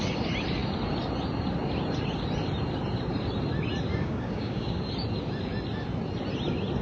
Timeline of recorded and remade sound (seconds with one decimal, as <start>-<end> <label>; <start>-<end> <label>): 0.0-3.9 recorded; 3.9-4.8 remade; 4.8-6.8 recorded